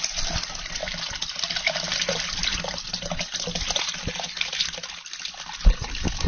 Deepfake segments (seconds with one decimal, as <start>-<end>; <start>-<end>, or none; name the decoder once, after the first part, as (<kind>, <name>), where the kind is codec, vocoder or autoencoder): 0.8-2.9 (vocoder, BigVGAN v2)